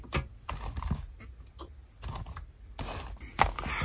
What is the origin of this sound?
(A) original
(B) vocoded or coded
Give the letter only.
A